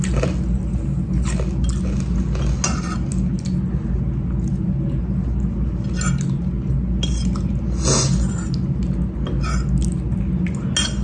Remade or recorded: recorded